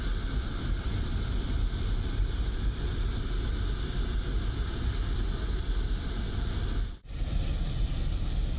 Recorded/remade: recorded